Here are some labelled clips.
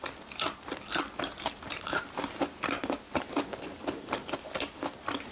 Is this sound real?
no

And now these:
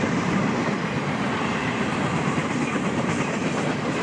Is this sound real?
no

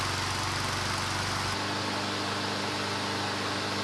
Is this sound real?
yes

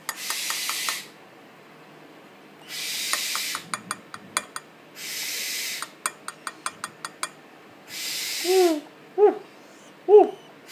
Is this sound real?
yes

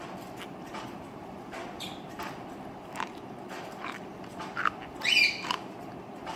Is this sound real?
no